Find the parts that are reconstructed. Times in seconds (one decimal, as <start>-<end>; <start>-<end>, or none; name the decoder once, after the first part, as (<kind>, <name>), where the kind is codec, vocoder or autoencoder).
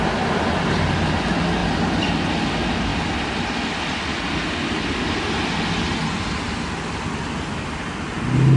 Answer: 1.6-2.3 (vocoder, BigVGAN v2); 2.9-5.2